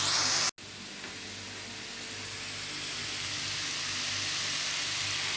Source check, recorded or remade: recorded